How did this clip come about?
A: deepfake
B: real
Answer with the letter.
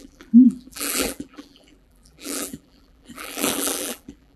A